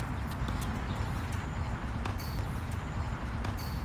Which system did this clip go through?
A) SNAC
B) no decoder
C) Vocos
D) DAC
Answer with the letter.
B